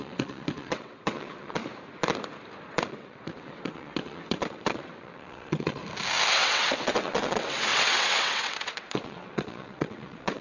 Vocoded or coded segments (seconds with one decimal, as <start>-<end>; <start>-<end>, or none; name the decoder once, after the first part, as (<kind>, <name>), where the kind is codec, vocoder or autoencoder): 0.0-1.6 (vocoder, WaveNeXt); 2.9-5.8; 6.3-10.4

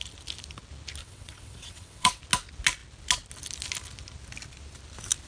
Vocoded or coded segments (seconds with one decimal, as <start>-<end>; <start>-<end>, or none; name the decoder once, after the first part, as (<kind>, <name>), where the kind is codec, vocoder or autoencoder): 1.0-2.2 (vocoder, WaveNeXt)

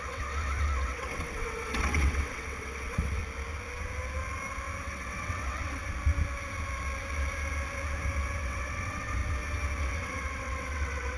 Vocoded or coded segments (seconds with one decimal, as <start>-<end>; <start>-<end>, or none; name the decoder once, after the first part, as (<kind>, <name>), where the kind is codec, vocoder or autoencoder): 0.0-3.2 (vocoder, WaveNeXt); 4.8-5.8; 8.4-9.2; 9.8-11.2

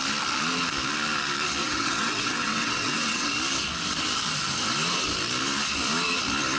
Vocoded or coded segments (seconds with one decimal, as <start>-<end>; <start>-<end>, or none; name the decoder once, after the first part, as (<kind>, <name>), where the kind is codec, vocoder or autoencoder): 1.6-3.3 (vocoder, WaveNeXt)